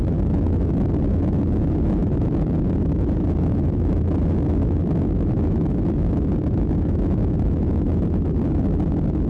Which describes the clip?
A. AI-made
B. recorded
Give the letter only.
A